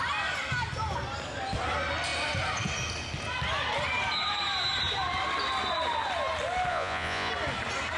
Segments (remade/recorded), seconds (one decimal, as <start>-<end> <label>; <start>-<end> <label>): 0.0-6.7 recorded; 6.7-7.3 remade; 7.3-8.0 recorded